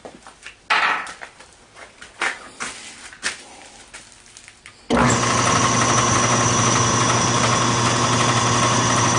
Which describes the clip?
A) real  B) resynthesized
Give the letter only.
A